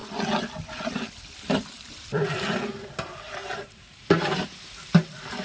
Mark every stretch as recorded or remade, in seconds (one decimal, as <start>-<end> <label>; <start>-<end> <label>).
0.0-1.7 recorded; 1.7-5.4 remade